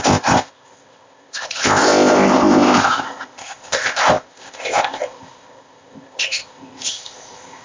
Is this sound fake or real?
fake